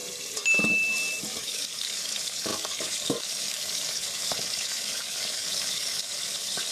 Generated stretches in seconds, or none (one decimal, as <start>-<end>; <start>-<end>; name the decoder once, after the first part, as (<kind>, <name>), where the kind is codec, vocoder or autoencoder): 1.4-6.7 (codec, DAC)